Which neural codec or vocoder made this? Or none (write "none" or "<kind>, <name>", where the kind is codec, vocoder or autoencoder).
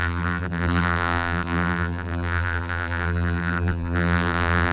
vocoder, BigVGAN v2